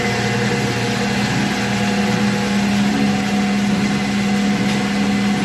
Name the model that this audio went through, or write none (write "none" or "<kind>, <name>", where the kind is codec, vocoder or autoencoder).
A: none